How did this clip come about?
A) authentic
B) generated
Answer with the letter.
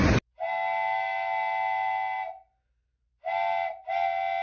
A